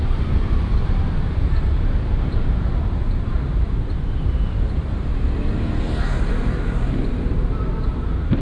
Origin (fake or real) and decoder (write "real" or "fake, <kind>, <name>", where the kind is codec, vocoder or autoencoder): fake, vocoder, BigVGAN v2